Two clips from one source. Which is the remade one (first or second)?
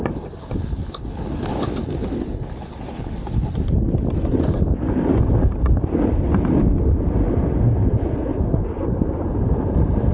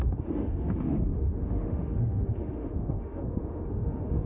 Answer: second